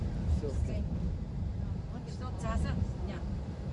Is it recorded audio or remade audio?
remade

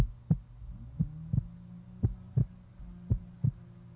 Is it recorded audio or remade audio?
recorded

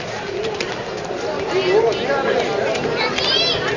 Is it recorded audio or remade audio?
recorded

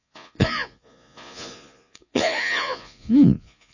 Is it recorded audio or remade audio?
remade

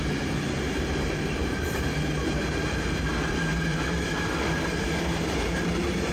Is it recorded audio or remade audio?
remade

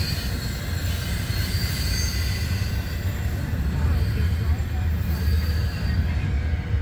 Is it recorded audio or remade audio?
recorded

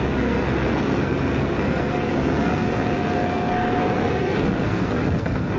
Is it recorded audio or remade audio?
remade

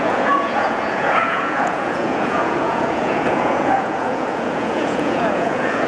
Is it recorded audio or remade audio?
remade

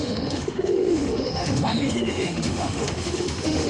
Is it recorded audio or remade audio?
remade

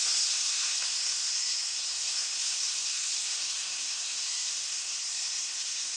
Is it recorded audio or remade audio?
remade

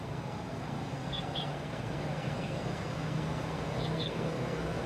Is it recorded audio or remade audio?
remade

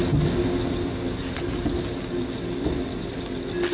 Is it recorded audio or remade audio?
recorded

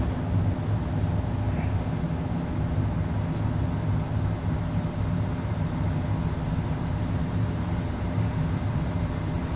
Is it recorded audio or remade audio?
recorded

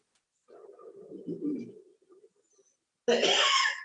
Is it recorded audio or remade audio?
recorded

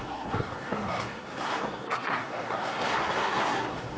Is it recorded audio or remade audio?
remade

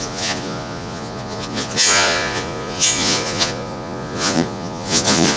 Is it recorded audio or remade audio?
remade